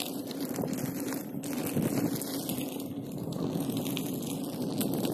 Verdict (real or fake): real